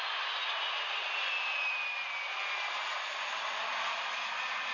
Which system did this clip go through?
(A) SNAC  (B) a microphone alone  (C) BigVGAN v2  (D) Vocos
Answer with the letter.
B